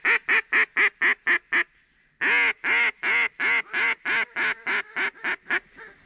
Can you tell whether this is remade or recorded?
recorded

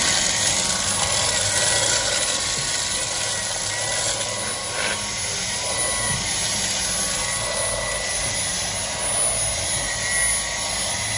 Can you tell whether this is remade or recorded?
recorded